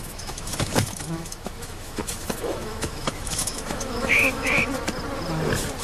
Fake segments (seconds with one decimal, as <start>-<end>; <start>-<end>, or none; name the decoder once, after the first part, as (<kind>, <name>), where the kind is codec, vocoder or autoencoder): 0.0-4.6 (autoencoder, DAC-VAE)